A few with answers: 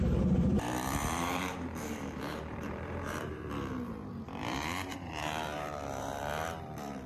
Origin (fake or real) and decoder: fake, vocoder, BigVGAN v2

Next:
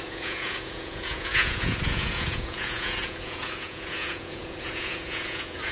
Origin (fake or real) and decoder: fake, vocoder, Vocos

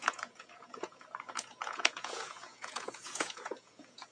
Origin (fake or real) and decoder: fake, vocoder, Vocos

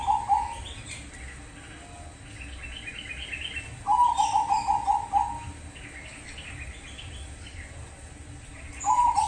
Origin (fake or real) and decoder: real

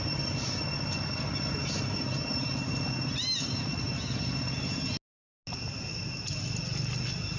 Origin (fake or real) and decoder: real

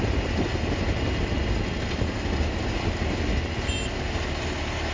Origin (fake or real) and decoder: real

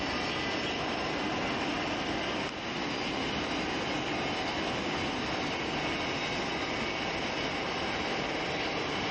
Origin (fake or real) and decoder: real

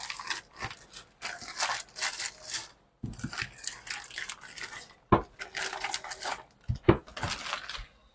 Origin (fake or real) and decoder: real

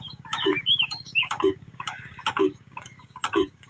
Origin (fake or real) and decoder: fake, codec, DAC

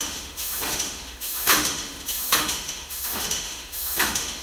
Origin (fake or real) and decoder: fake, autoencoder, DAC-VAE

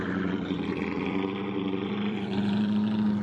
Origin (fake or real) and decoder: fake, vocoder, BigVGAN v2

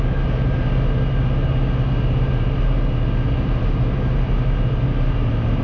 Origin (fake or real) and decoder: real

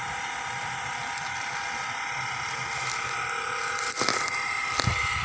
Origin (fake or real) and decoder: real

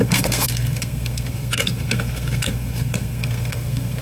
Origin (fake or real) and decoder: fake, codec, SNAC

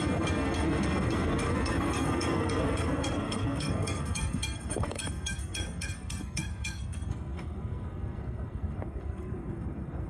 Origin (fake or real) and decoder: fake, codec, SNAC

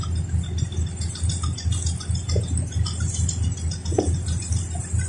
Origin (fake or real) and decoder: real